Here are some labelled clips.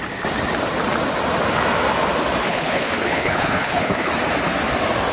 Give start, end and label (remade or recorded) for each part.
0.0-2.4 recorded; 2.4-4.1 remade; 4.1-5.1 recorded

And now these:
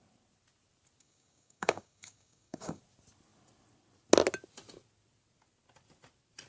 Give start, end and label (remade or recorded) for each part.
0.0-1.0 recorded; 1.0-2.8 remade; 2.8-6.5 recorded

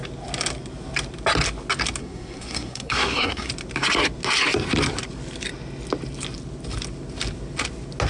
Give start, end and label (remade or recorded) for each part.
0.0-2.0 recorded; 2.0-3.5 remade; 3.5-8.1 recorded